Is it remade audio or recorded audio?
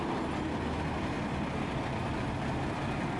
recorded